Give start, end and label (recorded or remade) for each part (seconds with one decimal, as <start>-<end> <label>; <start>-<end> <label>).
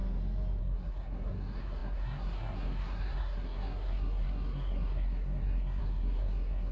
0.0-0.6 recorded; 0.6-6.7 remade